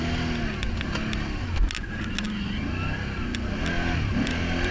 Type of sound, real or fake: real